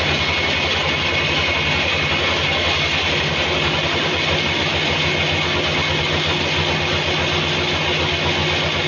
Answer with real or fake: real